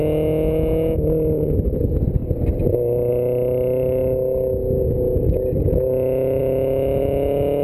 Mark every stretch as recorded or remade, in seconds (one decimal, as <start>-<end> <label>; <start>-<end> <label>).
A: 0.0-7.6 recorded

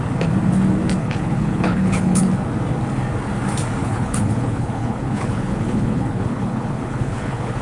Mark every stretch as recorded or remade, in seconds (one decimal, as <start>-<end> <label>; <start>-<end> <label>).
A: 0.0-1.0 recorded; 1.0-2.2 remade; 2.2-3.8 recorded; 3.8-7.6 remade

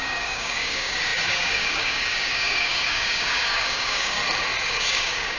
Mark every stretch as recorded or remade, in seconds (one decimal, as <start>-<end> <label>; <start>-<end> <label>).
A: 0.0-4.2 remade; 4.2-4.7 recorded; 4.7-5.4 remade

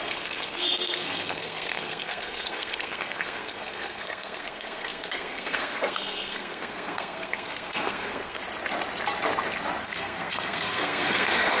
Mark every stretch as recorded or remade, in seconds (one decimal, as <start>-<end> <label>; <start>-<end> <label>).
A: 0.0-8.4 remade; 8.4-9.8 recorded; 9.8-11.6 remade

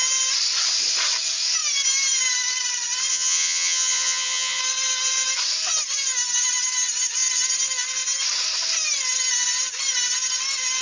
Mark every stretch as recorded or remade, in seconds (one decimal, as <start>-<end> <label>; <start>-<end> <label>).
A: 0.0-3.1 recorded; 3.1-4.6 remade; 4.6-10.8 recorded

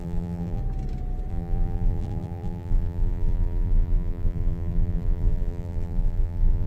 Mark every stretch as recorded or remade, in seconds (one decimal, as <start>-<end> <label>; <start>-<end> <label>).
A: 0.0-0.6 remade; 0.6-1.3 recorded; 1.3-6.7 remade

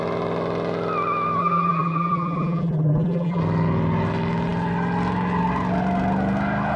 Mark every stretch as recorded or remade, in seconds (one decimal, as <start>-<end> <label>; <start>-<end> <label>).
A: 0.0-1.4 recorded; 1.4-3.4 remade; 3.4-6.8 recorded